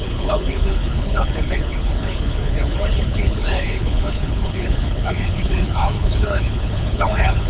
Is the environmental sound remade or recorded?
remade